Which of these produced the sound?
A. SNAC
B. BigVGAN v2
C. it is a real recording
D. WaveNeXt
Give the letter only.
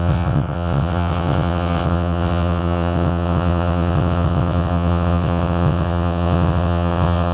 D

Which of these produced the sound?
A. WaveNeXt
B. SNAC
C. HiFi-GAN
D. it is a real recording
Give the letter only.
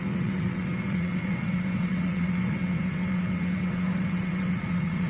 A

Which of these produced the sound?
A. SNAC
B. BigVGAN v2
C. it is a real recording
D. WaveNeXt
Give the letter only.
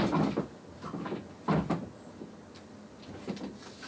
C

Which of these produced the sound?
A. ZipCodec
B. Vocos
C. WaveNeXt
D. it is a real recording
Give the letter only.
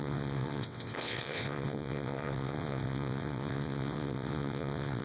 C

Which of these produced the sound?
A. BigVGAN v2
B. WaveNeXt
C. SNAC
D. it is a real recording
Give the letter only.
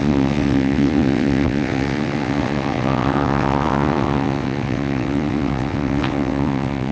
B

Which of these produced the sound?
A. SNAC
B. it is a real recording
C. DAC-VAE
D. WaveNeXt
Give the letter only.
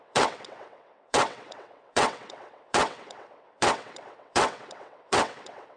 D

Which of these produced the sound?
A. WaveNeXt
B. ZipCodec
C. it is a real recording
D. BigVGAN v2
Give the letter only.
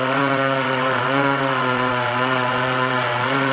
A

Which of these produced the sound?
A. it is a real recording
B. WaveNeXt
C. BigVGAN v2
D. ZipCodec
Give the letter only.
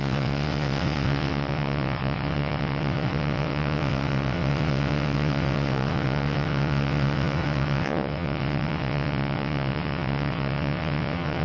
B